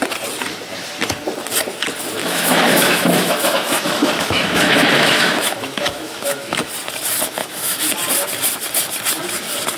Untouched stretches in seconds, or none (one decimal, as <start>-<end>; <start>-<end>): 0.0-2.2; 6.7-7.4; 7.9-9.8